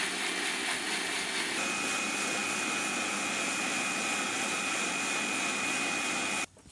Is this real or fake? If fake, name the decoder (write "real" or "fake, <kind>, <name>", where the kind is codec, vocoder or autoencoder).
real